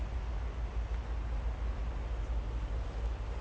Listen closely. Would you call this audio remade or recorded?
recorded